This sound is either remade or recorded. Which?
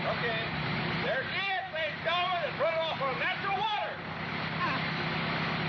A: recorded